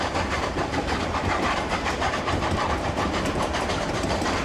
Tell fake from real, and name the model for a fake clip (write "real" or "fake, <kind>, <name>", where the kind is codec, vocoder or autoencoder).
fake, vocoder, BigVGAN v2